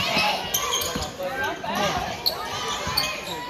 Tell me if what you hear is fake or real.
real